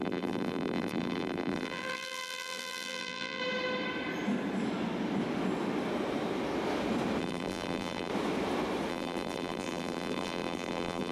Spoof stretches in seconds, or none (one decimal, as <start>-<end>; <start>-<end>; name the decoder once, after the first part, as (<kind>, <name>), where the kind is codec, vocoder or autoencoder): 0.0-3.4 (vocoder, BigVGAN v2); 7.2-8.1; 8.9-11.1